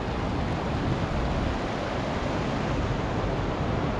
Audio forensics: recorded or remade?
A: recorded